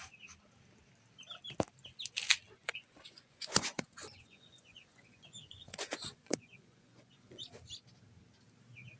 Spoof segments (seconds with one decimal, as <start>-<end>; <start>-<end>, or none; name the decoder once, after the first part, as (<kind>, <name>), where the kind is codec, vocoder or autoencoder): 2.6-7.5 (vocoder, Vocos)